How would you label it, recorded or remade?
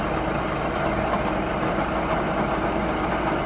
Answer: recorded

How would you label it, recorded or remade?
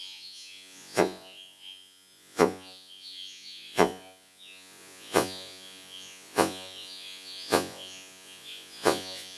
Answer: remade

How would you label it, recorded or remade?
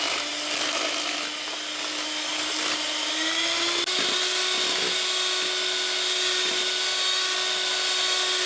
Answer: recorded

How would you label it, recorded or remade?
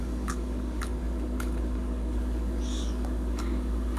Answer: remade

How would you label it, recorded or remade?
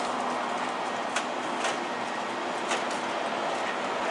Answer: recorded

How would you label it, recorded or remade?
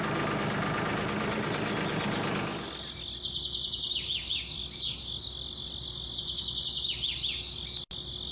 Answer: recorded